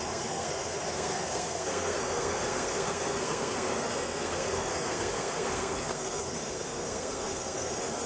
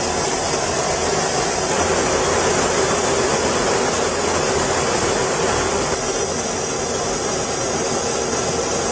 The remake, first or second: first